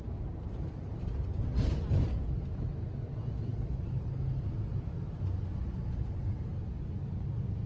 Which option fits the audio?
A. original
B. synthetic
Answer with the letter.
A